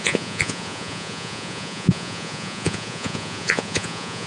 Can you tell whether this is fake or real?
fake